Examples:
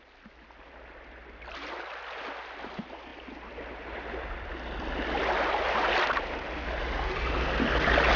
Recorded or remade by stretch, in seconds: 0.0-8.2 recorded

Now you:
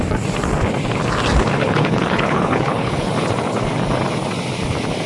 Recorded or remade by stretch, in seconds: 0.0-1.4 recorded; 1.4-3.1 remade; 3.1-5.1 recorded

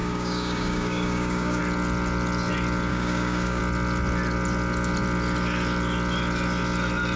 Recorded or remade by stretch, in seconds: 0.0-1.6 remade; 1.6-2.9 recorded; 2.9-3.6 remade; 3.6-7.2 recorded